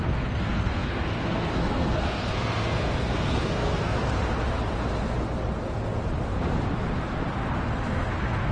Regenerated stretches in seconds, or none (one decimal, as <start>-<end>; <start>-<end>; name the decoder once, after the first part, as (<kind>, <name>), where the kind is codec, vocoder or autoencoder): 0.0-4.0 (codec, SNAC); 7.6-8.5